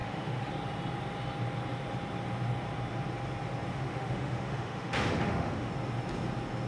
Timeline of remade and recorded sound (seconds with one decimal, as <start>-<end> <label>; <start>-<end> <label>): 0.0-0.5 remade; 0.5-3.7 recorded; 3.7-5.7 remade; 5.7-6.7 recorded